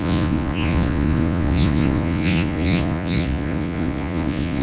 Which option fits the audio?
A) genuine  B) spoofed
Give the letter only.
B